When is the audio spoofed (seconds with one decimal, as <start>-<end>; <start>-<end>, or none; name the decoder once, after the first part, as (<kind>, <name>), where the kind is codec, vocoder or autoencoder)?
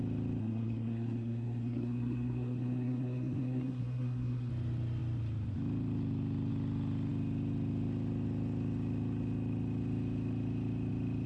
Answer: 0.4-4.5 (codec, SNAC)